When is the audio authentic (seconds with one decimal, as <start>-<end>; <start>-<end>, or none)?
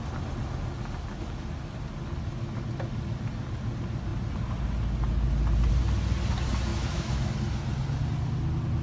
0.0-6.7; 7.3-8.8